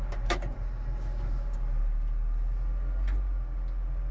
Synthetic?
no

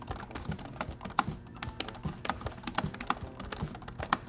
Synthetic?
no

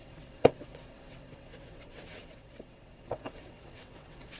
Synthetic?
yes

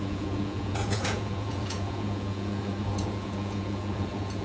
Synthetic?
yes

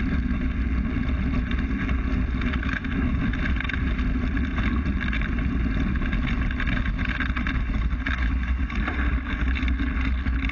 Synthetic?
no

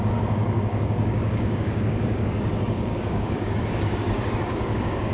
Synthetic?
yes